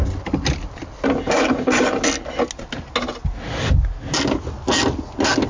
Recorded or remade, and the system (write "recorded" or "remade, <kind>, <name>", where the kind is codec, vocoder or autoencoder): recorded